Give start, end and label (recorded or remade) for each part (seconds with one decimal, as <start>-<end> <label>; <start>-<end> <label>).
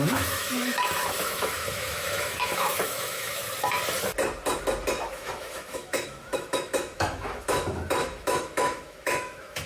0.0-3.4 remade; 3.4-4.9 recorded; 4.9-9.7 remade